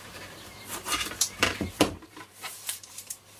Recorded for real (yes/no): no